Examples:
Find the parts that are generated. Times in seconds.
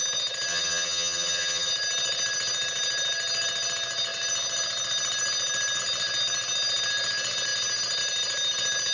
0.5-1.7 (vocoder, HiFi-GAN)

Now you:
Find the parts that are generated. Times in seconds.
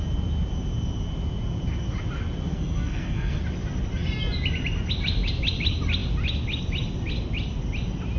2.5-3.4 (codec, SNAC)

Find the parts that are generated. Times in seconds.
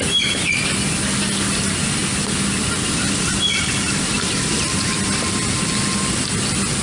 none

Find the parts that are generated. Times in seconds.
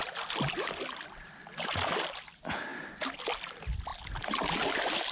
none